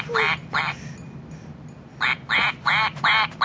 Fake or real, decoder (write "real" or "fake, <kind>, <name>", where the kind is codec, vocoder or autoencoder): real